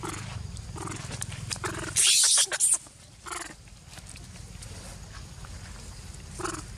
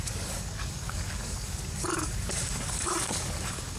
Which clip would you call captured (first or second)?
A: first